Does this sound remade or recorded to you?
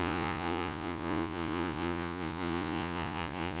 remade